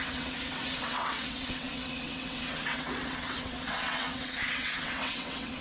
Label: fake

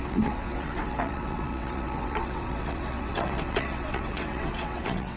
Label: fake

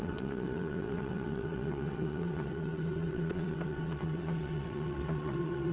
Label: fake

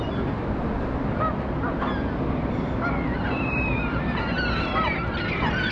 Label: real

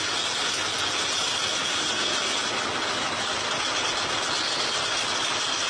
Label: real